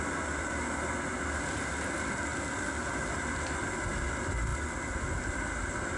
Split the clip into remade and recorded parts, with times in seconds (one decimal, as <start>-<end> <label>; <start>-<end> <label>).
0.0-6.0 recorded